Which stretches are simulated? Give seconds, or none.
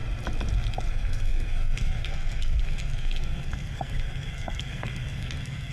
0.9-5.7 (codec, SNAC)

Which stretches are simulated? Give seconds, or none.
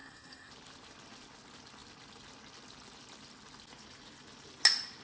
0.0-0.5 (codec, SNAC)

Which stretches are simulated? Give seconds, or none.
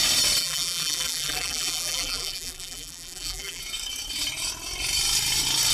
0.4-3.6 (vocoder, BigVGAN v2)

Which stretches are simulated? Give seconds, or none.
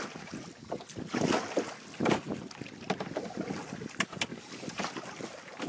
none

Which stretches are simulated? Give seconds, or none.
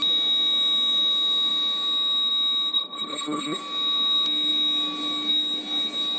2.7-3.6 (codec, HILCodec)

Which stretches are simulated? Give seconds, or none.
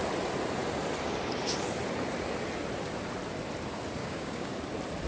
4.0-4.6 (codec, DAC)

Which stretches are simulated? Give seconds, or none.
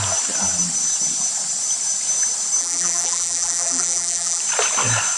2.6-4.4 (vocoder, BigVGAN v2)